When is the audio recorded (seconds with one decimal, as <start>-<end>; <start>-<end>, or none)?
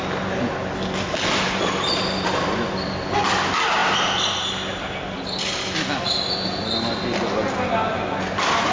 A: 0.0-8.7